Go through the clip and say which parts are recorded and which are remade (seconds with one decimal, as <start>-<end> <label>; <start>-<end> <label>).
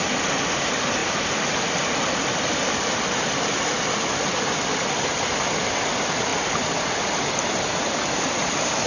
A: 0.0-8.9 recorded